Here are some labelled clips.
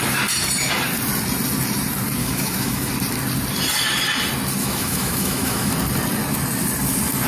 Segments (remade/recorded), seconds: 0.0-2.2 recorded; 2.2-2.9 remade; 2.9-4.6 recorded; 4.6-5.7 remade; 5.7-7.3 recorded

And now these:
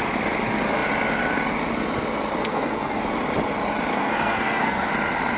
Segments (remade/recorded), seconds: 0.0-2.4 recorded; 2.4-3.1 remade; 3.1-3.9 recorded; 3.9-4.9 remade; 4.9-5.4 recorded

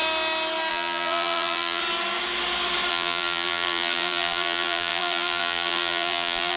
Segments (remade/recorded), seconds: 0.0-0.7 recorded; 0.7-1.8 remade; 1.8-2.9 recorded; 2.9-6.6 remade

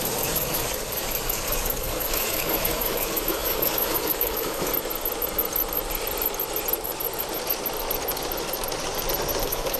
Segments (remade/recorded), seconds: 0.0-4.7 remade; 4.7-9.4 recorded; 9.4-9.8 remade

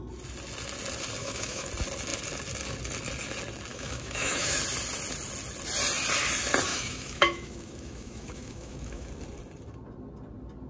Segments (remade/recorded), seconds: 0.0-1.2 recorded; 1.2-1.7 remade; 1.7-3.7 recorded; 3.7-4.6 remade; 4.6-6.7 recorded; 6.7-9.1 remade; 9.1-10.7 recorded

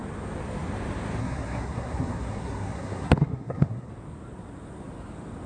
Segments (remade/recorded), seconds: 0.0-1.2 recorded; 1.2-3.9 remade; 3.9-5.5 recorded

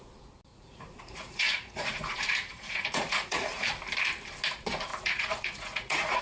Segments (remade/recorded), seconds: 0.0-0.5 recorded; 0.5-3.7 remade; 3.7-4.9 recorded; 4.9-6.2 remade

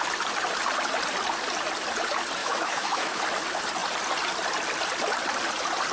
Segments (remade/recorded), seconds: 0.0-2.4 recorded; 2.4-3.2 remade; 3.2-5.9 recorded